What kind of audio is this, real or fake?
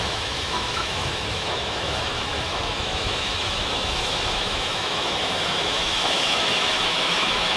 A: fake